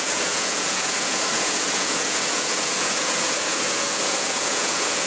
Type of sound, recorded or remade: remade